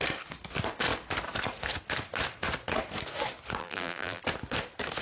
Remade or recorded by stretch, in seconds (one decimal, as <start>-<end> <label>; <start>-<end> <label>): 0.0-3.6 recorded; 3.6-4.2 remade; 4.2-5.0 recorded